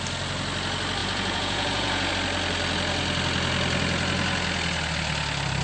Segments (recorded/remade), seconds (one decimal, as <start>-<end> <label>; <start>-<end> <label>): 0.0-1.0 recorded; 1.0-2.1 remade; 2.1-5.6 recorded